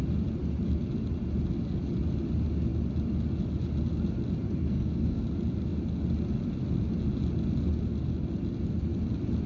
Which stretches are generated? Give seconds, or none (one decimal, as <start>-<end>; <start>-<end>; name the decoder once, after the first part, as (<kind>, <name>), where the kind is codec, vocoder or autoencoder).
4.6-5.2 (codec, SNAC)